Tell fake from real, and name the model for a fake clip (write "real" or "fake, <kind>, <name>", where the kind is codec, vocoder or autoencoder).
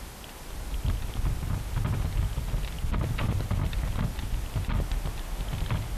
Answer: real